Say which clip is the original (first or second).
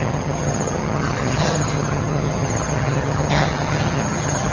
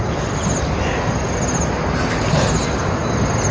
second